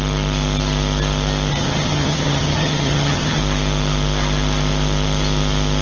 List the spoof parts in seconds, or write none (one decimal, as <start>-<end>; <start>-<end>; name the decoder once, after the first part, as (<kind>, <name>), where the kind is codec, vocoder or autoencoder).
1.5-3.4 (vocoder, HiFi-GAN)